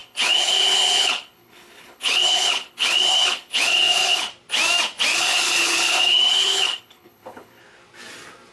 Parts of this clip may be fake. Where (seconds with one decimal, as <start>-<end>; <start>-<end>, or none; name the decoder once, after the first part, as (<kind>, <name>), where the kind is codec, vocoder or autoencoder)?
0.0-4.3 (codec, HILCodec); 5.1-7.6